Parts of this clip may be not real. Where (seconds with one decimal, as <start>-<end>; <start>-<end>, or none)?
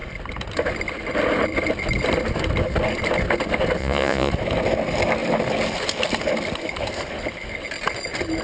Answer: 3.8-4.3